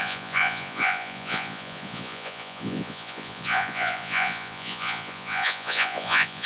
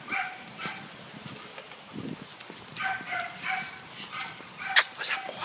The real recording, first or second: second